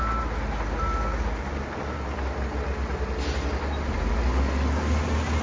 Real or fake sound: real